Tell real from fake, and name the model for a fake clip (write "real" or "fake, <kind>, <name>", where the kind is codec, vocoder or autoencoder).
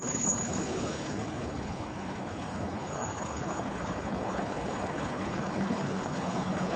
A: fake, codec, HILCodec